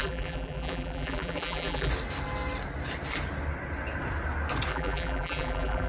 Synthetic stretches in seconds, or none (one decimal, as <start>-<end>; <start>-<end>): 0.0-1.9; 4.7-5.9